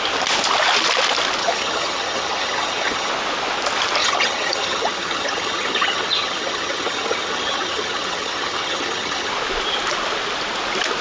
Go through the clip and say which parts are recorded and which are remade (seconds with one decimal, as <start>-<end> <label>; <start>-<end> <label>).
0.0-1.4 recorded; 1.4-3.1 remade; 3.1-4.0 recorded; 4.0-9.3 remade; 9.3-11.0 recorded